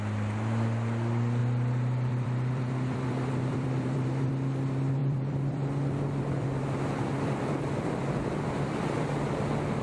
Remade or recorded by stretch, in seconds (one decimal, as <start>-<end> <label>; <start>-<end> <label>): 0.0-1.4 recorded; 1.4-4.3 remade; 4.3-5.0 recorded; 5.0-9.1 remade; 9.1-9.8 recorded